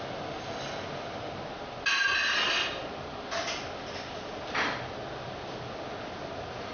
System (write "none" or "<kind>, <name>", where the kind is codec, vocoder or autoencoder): none